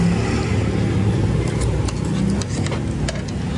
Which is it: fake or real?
real